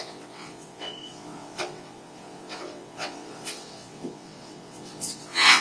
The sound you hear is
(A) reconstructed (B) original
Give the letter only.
A